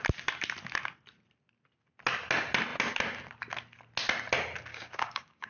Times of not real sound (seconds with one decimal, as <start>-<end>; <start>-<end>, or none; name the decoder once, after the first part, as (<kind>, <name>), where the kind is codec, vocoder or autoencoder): 4.7-5.5 (codec, DAC)